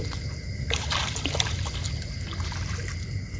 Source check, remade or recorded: recorded